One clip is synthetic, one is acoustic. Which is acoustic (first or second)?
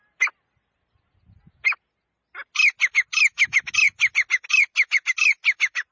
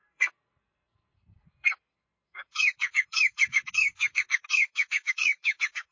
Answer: first